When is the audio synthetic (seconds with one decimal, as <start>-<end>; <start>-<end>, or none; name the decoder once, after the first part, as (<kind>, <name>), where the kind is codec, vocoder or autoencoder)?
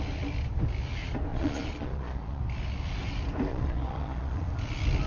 1.3-2.4 (vocoder, Vocos); 3.5-4.5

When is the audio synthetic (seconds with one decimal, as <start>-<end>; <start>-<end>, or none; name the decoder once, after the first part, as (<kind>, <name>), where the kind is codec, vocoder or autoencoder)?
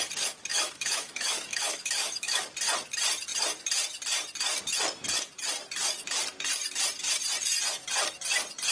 0.5-2.4 (autoencoder, DAC-VAE)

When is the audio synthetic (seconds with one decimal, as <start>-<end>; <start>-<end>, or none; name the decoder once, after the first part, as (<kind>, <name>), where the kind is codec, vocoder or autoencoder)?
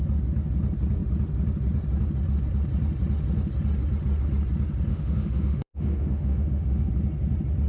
4.9-6.9 (autoencoder, DAC-VAE)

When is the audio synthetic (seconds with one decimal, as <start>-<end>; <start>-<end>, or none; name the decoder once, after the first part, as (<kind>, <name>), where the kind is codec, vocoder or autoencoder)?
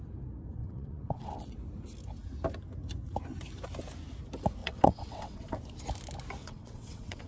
0.6-1.5 (vocoder, WaveNeXt); 4.6-5.6; 6.4-7.3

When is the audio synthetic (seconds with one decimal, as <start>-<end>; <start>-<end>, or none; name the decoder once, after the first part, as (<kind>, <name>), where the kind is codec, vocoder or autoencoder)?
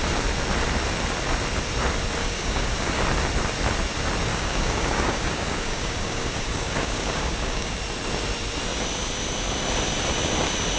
2.2-3.0 (codec, DAC); 4.3-7.8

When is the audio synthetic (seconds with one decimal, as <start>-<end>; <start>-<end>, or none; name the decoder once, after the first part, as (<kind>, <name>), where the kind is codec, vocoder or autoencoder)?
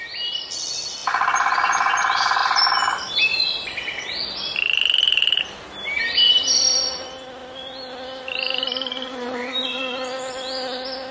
none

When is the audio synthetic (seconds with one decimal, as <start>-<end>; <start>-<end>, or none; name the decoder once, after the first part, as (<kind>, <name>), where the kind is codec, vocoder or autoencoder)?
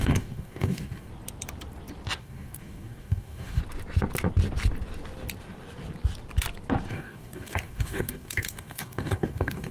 0.0-1.1 (codec, DAC); 2.2-3.6; 6.9-9.7